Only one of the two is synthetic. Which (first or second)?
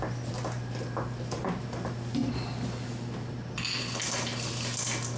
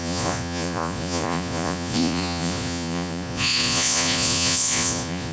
second